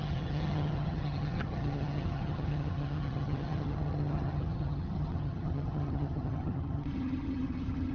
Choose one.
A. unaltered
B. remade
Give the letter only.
B